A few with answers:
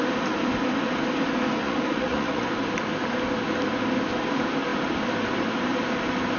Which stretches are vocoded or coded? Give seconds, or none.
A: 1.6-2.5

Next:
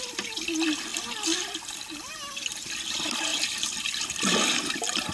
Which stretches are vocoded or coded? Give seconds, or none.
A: none

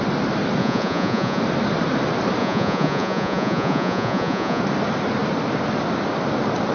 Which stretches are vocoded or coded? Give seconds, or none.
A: 0.6-1.4; 2.4-4.6

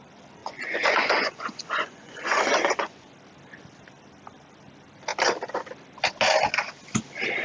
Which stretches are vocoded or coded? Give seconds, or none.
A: 0.4-3.1

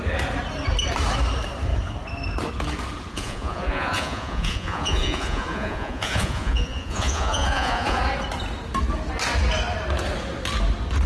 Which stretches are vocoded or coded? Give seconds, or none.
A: 3.1-8.0

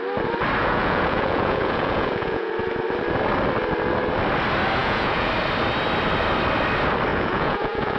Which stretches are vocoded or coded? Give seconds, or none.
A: 0.6-2.5; 4.8-5.3; 7.1-8.0

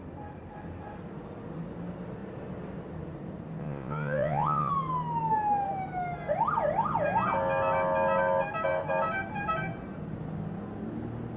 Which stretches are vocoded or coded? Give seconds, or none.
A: 3.6-4.7

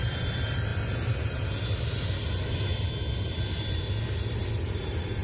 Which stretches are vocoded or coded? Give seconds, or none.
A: none